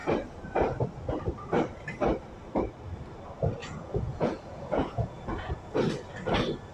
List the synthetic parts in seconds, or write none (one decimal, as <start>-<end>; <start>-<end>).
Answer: 3.6-5.5